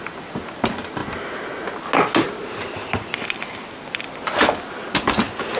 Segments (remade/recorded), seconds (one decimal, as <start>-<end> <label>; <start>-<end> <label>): 0.0-5.6 recorded